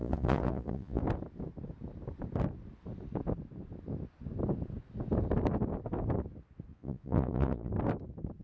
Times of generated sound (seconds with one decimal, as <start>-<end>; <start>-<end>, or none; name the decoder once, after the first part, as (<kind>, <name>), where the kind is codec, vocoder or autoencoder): 0.0-1.0 (vocoder, Vocos); 6.7-7.7